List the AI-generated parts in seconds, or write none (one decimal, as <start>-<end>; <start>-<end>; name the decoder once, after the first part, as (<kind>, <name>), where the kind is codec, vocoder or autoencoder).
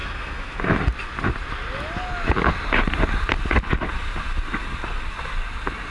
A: 0.0-0.8 (autoencoder, DAC-VAE)